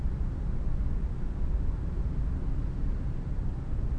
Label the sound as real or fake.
real